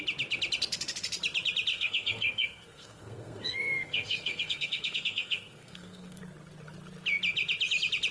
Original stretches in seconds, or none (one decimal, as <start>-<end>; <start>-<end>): 0.0-1.7; 6.2-8.1